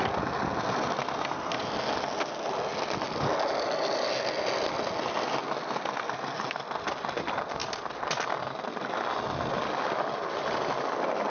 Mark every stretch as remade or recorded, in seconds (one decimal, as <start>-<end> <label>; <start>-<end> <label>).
0.0-11.3 recorded